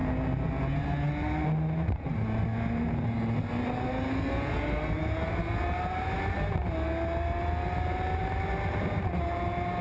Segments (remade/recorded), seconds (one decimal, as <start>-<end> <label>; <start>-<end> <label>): 0.0-9.8 recorded